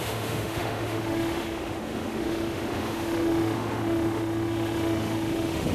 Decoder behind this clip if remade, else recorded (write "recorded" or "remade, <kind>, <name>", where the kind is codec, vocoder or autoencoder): remade, autoencoder, DAC-VAE